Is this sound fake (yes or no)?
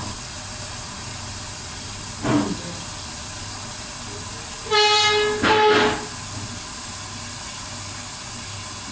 no